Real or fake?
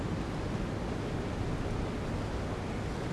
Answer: real